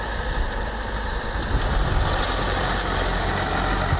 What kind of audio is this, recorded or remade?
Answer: recorded